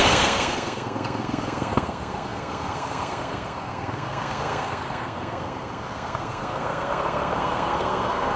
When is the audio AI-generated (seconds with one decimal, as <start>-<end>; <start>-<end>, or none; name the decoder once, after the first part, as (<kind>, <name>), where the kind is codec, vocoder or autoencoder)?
0.0-8.4 (codec, SNAC)